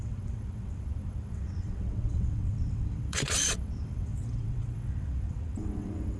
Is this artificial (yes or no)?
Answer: yes